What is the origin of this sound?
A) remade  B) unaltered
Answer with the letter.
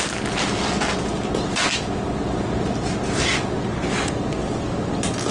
B